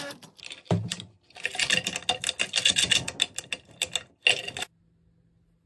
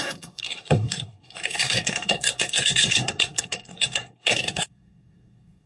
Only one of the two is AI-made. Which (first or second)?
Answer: second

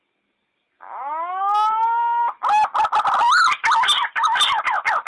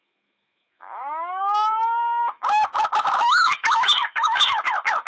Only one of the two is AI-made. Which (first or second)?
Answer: second